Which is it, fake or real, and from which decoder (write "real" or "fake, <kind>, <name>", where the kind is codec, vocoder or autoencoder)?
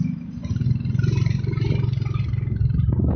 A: real